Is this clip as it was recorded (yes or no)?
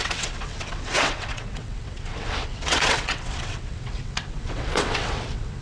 no